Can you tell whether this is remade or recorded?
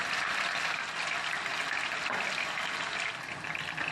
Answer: recorded